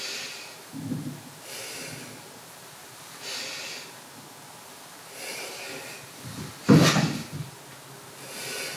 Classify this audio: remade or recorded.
recorded